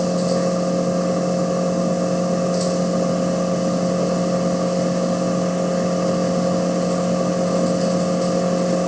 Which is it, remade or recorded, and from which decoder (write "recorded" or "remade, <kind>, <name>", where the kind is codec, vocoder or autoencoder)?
recorded